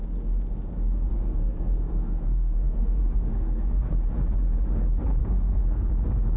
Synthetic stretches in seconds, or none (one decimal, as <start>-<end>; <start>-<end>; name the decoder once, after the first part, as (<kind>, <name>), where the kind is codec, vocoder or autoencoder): 1.1-3.9 (codec, SNAC); 5.2-5.9

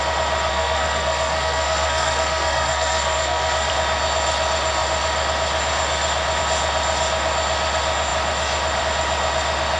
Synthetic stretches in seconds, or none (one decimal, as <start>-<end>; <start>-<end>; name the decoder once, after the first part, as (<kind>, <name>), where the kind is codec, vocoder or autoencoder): 0.5-3.7 (codec, SNAC)

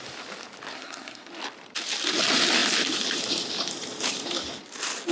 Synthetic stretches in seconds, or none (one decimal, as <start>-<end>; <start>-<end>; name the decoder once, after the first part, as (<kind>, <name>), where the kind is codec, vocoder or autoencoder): 0.7-1.3 (codec, SNAC)

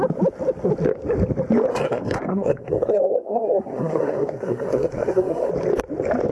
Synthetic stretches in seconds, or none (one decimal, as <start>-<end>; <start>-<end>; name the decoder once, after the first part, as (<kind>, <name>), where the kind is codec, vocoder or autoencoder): 1.7-5.5 (codec, SNAC)

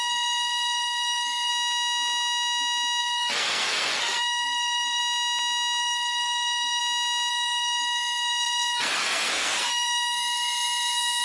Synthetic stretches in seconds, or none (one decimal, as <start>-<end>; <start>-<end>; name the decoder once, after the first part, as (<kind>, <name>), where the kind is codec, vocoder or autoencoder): 0.0-1.5 (codec, SNAC); 3.0-5.0; 5.8-6.8; 7.3-11.2

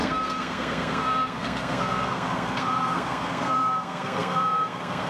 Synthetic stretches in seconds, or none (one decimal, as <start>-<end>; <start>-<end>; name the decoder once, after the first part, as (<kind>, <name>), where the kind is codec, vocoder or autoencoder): 0.0-5.1 (codec, SNAC)